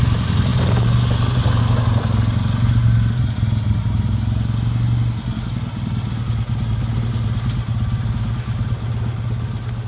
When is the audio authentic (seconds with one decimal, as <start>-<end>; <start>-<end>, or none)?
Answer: 0.0-9.9